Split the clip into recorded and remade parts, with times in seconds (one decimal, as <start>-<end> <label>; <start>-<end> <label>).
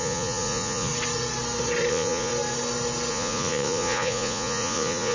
0.0-0.9 remade; 0.9-1.9 recorded; 1.9-2.3 remade; 2.3-3.1 recorded; 3.1-5.1 remade